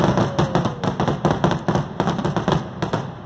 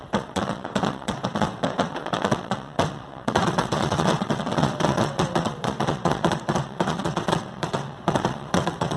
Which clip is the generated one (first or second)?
second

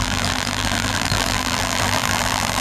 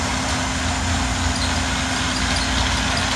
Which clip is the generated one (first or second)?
first